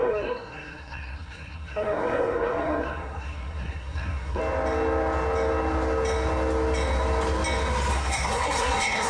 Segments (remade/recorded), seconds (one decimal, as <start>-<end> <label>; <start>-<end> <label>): 0.0-4.4 remade; 4.4-7.9 recorded; 7.9-9.1 remade